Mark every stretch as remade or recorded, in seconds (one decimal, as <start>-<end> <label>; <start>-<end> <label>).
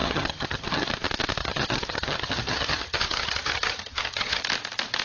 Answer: 0.0-0.9 remade; 0.9-1.4 recorded; 1.4-4.4 remade; 4.4-5.0 recorded